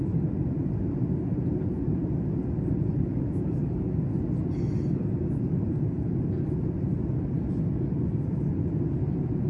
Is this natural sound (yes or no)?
yes